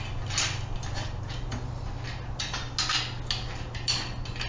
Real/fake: real